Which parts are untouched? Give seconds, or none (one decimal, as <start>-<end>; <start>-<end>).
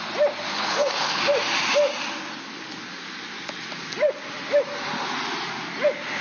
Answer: 0.0-0.5; 1.2-6.2